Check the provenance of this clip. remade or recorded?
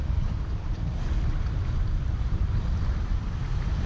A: remade